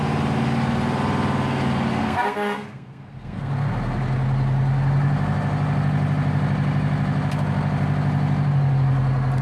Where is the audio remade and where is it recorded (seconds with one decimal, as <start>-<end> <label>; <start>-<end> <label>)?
0.0-2.0 recorded; 2.0-3.5 remade; 3.5-9.4 recorded